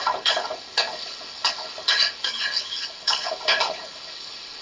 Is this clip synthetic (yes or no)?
yes